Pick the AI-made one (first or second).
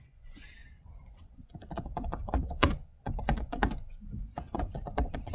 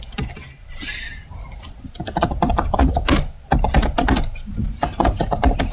first